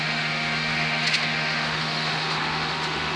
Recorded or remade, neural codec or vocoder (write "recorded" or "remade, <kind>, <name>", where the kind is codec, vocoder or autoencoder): remade, autoencoder, DAC-VAE